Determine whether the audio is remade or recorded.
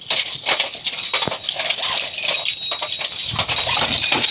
recorded